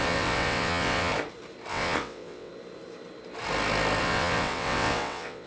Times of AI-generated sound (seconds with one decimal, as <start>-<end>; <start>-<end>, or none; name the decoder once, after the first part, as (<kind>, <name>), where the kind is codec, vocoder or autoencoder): 0.0-1.1 (vocoder, WaveNeXt); 1.7-2.5; 4.0-5.5